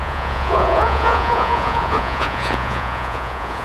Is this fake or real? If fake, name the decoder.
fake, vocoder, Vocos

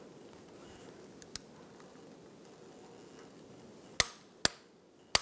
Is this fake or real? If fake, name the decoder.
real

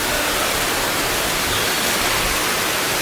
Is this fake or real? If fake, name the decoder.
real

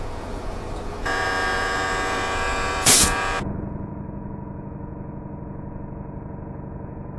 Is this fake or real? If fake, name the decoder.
fake, vocoder, Vocos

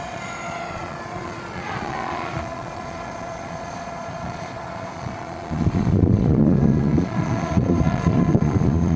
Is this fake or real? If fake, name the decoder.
fake, vocoder, Vocos